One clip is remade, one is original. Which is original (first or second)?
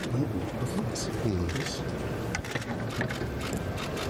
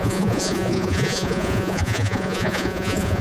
first